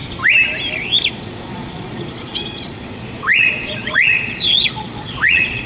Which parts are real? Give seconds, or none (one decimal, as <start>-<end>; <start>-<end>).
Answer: 0.0-1.1